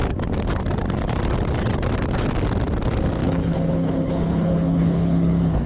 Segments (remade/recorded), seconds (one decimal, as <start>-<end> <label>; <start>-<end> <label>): 0.0-3.2 recorded; 3.2-5.7 remade